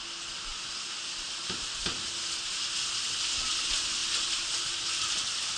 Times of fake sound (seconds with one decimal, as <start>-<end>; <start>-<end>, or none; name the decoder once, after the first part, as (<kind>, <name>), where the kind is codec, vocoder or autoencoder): none